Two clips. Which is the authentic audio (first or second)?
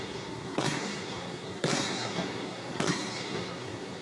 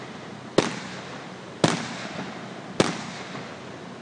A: second